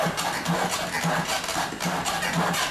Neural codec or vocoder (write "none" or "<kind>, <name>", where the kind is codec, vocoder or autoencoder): none